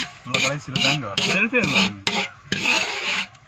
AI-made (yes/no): yes